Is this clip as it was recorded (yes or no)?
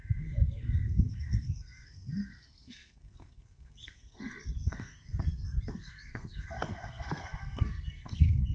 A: no